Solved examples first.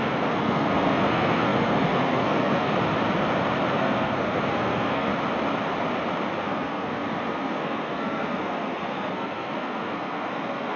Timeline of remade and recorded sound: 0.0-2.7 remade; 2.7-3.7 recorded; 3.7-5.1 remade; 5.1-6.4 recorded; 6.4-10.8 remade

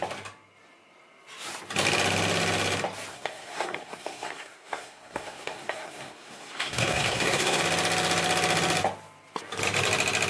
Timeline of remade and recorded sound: 0.0-3.1 recorded; 3.1-7.6 remade; 7.6-10.3 recorded

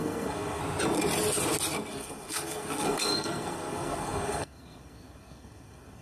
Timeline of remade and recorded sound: 0.0-0.6 remade; 0.6-1.9 recorded; 1.9-6.0 remade